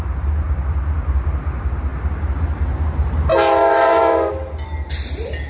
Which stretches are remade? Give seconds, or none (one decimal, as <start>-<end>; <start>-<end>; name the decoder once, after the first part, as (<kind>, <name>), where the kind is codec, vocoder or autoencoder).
3.6-4.3 (codec, DAC)